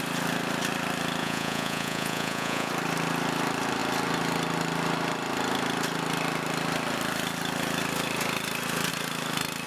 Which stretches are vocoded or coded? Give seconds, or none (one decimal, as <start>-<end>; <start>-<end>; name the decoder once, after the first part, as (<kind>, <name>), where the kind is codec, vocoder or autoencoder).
1.2-2.7 (vocoder, Vocos)